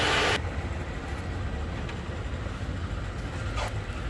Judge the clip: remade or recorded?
recorded